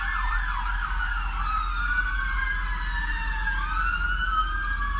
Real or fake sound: real